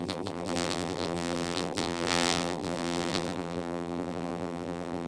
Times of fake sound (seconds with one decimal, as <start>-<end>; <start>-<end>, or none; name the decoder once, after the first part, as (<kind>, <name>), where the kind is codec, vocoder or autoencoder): 0.0-5.1 (vocoder, BigVGAN v2)